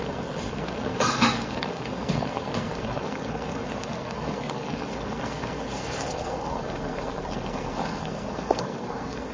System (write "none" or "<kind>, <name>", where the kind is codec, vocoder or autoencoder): codec, SNAC